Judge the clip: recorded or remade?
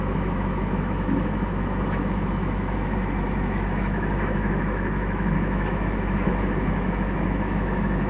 remade